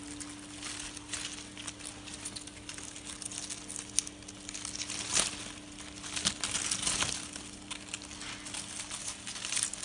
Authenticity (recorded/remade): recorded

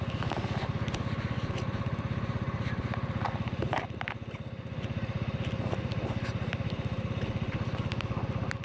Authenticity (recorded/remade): recorded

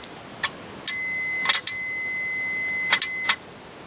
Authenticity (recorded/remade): recorded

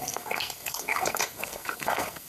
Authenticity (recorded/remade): remade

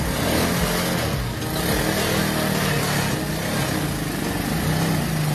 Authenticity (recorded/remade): recorded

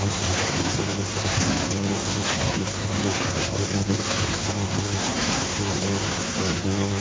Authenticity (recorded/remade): remade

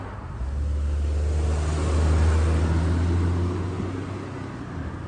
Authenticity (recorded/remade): recorded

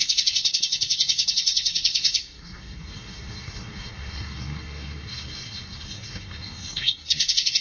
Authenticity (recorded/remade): remade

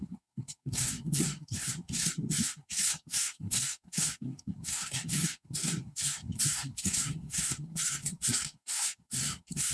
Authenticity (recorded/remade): remade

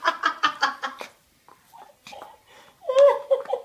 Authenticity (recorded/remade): recorded